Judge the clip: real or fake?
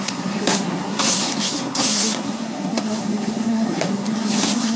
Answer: fake